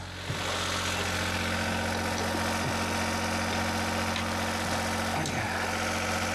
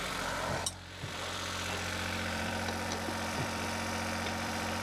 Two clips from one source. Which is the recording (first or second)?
first